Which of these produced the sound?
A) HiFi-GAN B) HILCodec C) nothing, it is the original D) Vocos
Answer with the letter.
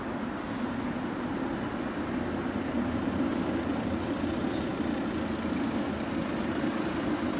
C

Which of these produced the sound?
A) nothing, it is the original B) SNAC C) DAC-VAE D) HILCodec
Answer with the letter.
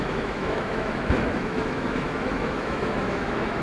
C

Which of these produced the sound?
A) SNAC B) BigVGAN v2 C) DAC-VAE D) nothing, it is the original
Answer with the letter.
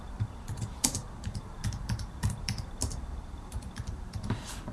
B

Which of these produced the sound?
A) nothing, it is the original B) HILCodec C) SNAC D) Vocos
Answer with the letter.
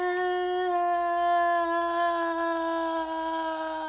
A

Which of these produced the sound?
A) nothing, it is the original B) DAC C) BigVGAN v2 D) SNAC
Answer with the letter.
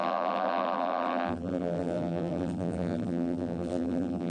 C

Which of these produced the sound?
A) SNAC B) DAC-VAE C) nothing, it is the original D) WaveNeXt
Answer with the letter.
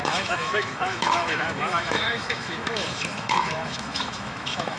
B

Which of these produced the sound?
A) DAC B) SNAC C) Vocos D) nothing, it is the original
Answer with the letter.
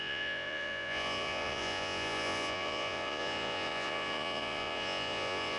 C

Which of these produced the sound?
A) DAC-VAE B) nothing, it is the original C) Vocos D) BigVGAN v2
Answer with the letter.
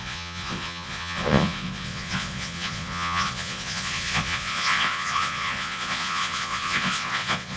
C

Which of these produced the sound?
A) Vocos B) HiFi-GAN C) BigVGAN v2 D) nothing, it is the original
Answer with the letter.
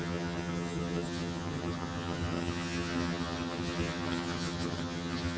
B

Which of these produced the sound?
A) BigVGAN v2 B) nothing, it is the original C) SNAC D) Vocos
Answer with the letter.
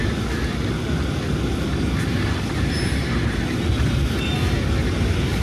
B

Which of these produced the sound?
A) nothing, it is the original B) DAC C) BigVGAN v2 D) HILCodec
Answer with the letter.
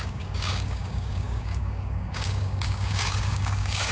B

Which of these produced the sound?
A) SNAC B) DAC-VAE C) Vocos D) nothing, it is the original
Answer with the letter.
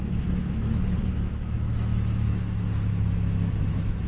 B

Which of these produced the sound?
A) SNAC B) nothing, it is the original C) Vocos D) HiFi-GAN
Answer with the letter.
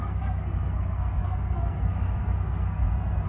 A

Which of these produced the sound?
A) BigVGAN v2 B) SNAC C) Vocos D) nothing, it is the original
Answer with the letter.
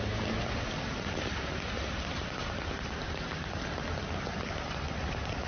A